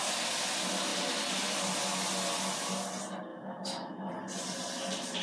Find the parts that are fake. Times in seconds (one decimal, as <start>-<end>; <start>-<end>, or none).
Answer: 3.3-4.1